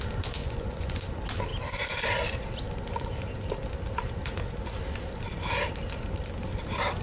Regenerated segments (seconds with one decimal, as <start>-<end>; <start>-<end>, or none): 0.4-1.0